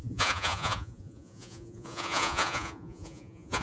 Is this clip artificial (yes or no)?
yes